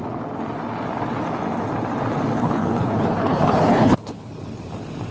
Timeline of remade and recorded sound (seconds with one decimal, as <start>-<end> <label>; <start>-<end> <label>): 0.0-2.4 recorded; 2.4-4.3 remade; 4.3-5.1 recorded